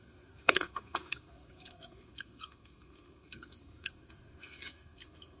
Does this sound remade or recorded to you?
remade